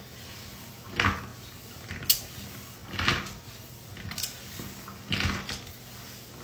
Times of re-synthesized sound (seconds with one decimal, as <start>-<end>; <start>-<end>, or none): none